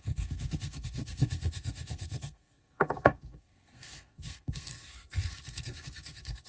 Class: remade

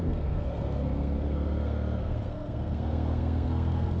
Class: remade